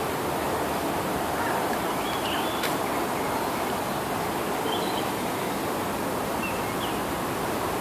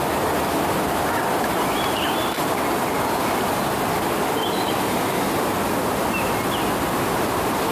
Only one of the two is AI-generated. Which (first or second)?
first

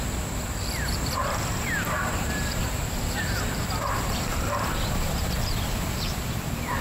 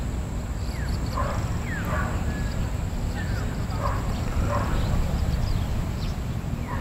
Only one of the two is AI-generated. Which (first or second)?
first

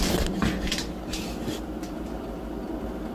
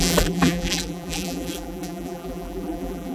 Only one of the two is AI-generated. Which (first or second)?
second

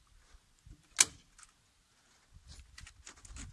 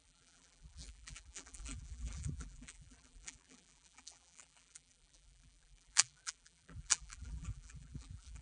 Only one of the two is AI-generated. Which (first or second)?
second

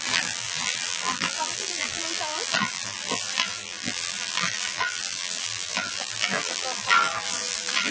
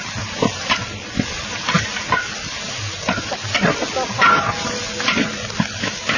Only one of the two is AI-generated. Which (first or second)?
first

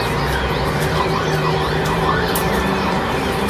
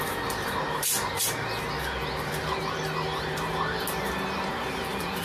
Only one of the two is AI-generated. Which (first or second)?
first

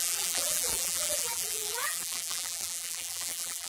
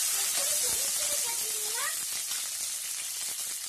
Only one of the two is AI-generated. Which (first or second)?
first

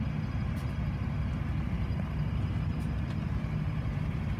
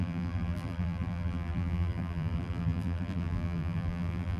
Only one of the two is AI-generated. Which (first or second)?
second